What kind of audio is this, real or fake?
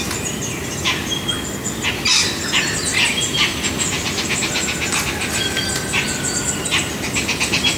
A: real